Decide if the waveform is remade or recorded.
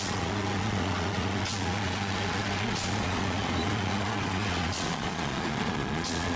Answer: remade